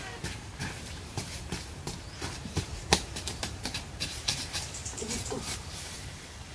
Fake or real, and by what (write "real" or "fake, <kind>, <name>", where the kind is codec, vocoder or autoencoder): fake, vocoder, BigVGAN v2